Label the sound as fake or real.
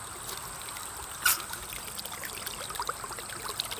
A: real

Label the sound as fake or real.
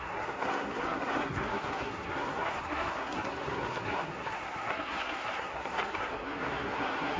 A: fake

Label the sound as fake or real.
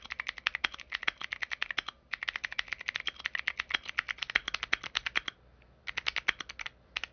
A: real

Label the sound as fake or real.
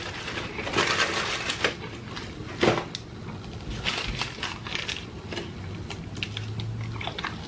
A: real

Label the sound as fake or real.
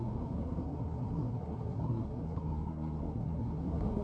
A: fake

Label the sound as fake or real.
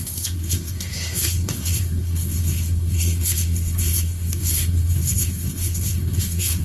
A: fake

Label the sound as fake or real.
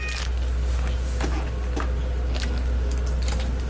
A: real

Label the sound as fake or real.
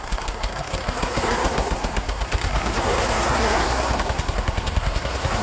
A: fake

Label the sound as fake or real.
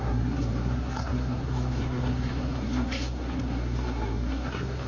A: fake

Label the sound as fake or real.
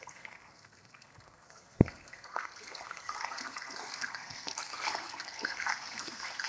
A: fake